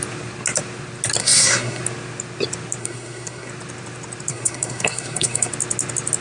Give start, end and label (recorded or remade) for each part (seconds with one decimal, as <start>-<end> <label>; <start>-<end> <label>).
0.0-1.2 recorded; 1.2-1.8 remade; 1.8-2.8 recorded; 2.8-3.5 remade; 3.5-4.3 recorded; 4.3-5.5 remade; 5.5-6.2 recorded